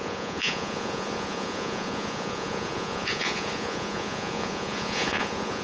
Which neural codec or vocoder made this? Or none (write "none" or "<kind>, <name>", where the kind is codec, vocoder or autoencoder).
vocoder, Vocos